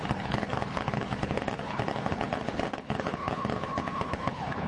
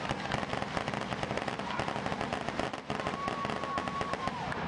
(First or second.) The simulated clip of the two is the first